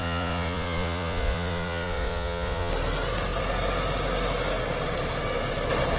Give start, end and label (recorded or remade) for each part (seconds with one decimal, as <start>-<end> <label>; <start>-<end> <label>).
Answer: 0.0-2.7 remade; 2.7-6.0 recorded